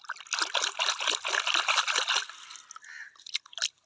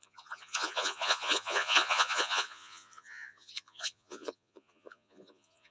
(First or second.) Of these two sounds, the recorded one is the first